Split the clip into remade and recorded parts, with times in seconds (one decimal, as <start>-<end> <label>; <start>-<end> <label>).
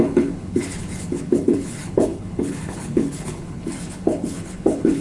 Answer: 0.0-5.0 remade